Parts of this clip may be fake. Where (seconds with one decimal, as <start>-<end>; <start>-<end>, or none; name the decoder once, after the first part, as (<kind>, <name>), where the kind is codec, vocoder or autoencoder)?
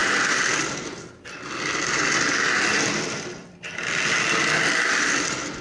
none